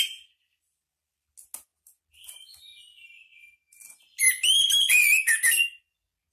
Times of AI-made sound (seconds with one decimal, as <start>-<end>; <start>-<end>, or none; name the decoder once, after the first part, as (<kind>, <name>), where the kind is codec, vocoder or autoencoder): none

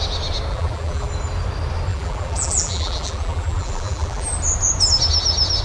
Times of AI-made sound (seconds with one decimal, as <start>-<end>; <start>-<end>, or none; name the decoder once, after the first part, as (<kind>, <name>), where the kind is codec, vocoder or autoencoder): 0.5-1.1 (vocoder, BigVGAN v2); 1.9-4.3

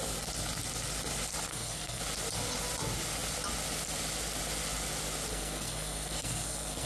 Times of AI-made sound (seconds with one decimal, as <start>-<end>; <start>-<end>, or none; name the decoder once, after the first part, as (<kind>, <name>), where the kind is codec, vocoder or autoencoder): 1.5-2.0 (codec, SNAC); 5.3-6.9

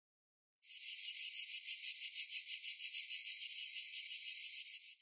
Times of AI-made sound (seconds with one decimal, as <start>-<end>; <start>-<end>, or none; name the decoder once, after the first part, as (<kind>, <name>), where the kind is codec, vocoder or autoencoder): 0.5-2.9 (vocoder, BigVGAN v2); 3.9-4.6

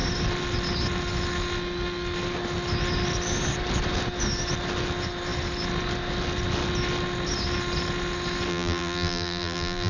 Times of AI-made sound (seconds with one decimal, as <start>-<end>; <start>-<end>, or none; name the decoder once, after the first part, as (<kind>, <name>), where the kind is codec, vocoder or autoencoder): 8.5-9.9 (vocoder, BigVGAN v2)